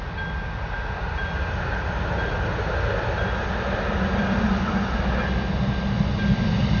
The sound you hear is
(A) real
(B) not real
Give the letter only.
A